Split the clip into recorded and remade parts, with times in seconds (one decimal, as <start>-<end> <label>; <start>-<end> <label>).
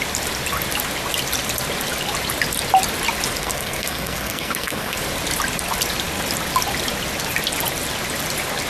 0.0-3.4 recorded; 3.4-5.0 remade; 5.0-8.7 recorded